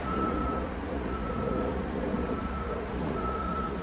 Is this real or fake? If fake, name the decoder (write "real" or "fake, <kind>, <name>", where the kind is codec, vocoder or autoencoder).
fake, vocoder, Vocos